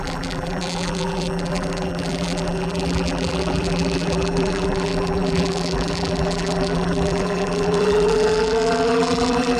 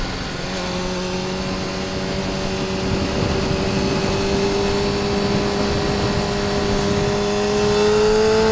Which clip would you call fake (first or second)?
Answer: first